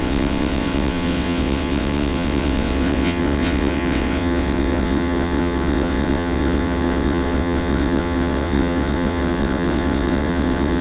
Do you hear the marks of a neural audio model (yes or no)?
yes